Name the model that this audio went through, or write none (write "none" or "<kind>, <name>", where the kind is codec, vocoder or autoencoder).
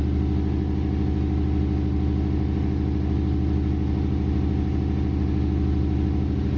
none